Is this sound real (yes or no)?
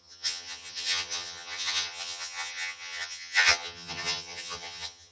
no